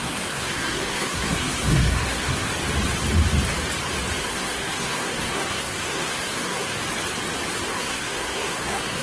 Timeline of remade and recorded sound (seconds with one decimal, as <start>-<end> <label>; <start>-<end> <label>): 0.0-2.5 remade; 2.5-4.2 recorded; 4.2-6.8 remade; 6.8-7.7 recorded; 7.7-9.0 remade